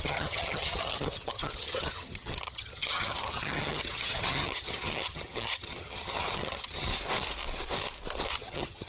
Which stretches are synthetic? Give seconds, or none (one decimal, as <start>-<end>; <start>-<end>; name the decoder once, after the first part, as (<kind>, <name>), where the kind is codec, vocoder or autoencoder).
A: 0.0-6.9 (vocoder, HiFi-GAN); 8.3-8.9